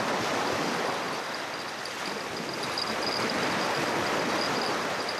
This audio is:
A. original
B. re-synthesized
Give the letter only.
A